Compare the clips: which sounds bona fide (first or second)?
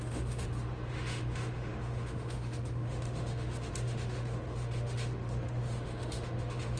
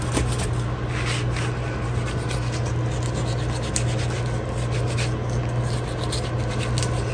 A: second